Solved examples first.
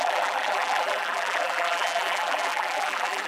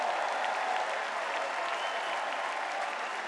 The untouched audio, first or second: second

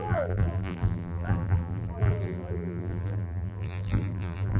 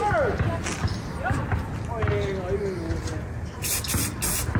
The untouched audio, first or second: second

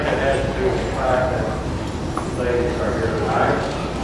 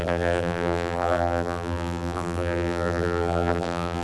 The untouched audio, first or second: first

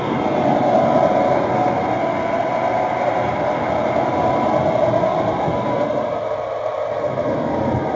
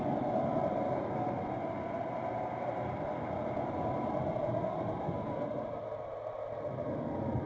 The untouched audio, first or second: first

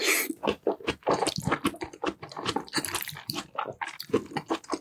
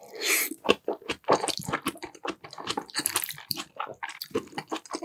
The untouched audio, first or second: first